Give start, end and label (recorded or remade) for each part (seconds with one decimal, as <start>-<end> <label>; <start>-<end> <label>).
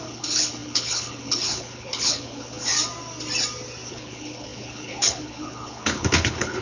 0.0-2.7 remade; 2.7-3.9 recorded; 3.9-6.6 remade